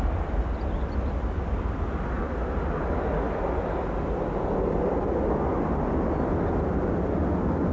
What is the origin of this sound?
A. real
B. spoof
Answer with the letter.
A